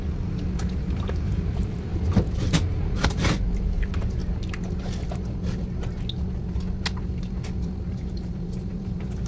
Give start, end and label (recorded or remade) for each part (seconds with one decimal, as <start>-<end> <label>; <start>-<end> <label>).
0.0-1.9 remade; 1.9-2.5 recorded; 2.5-4.2 remade; 4.2-7.6 recorded; 7.6-9.3 remade